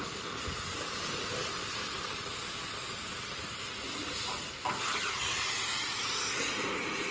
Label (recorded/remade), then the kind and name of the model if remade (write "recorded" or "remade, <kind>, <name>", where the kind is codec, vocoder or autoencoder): recorded